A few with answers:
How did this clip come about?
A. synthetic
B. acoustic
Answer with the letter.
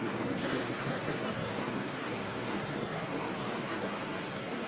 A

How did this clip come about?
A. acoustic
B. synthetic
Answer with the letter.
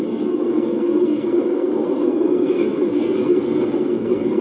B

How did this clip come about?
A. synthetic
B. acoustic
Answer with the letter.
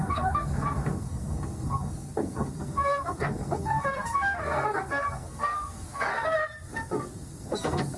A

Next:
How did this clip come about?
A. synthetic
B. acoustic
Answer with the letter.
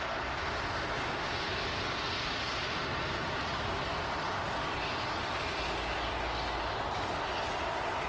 B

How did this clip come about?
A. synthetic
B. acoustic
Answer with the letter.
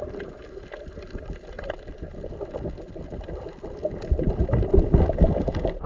B